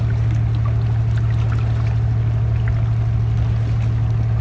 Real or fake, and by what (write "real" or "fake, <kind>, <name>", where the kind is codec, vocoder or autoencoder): real